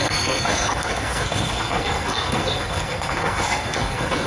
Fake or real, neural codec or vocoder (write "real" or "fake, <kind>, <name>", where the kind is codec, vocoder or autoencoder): fake, codec, SNAC